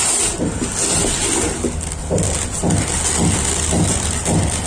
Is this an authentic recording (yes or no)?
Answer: yes